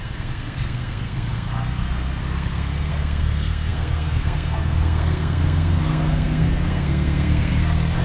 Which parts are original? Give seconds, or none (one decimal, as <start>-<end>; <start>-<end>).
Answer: none